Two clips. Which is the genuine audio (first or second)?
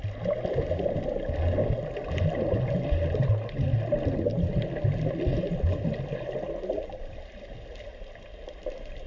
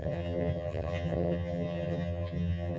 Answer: first